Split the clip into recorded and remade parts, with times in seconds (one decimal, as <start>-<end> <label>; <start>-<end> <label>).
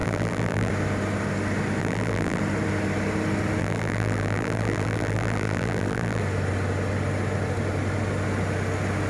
0.0-0.7 remade; 0.7-1.8 recorded; 1.8-2.4 remade; 2.4-3.6 recorded; 3.6-6.2 remade; 6.2-9.1 recorded